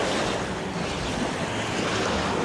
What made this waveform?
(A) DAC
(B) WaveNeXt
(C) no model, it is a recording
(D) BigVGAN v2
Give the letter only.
C